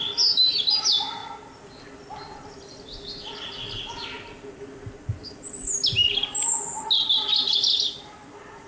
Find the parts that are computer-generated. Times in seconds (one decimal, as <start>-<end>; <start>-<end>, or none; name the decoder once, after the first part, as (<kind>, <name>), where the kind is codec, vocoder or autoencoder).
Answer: none